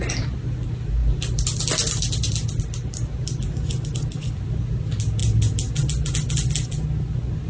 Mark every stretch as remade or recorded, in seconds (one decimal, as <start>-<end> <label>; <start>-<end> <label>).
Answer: 0.0-7.5 recorded